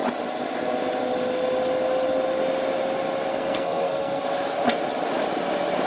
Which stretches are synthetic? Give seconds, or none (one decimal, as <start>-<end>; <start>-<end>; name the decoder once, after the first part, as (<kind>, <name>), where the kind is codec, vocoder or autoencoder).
3.3-4.2 (codec, SNAC)